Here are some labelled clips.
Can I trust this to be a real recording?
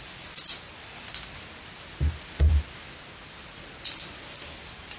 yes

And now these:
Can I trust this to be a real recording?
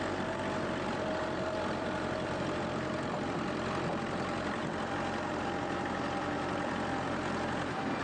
no